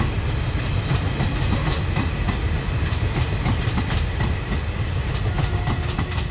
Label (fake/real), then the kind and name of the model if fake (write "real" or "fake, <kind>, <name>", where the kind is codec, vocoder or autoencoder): real